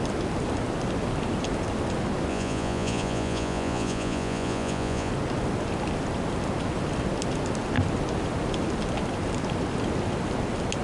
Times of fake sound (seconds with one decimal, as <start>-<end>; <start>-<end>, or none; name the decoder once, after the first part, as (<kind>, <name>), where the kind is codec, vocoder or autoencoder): 2.3-5.1 (vocoder, Vocos)

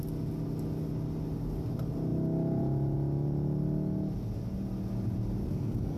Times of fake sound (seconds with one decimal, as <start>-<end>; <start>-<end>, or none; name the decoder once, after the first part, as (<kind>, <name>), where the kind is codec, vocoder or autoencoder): 5.4-6.0 (codec, SNAC)

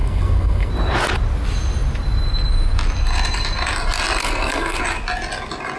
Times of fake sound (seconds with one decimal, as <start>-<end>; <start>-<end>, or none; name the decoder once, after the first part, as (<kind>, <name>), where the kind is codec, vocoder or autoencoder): 0.0-0.7 (codec, SNAC); 4.2-4.8